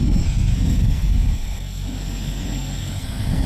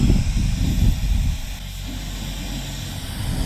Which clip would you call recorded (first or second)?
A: second